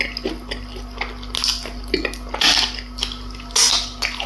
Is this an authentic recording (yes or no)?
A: yes